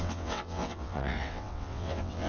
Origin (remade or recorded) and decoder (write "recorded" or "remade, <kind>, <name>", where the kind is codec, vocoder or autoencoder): remade, vocoder, WaveNeXt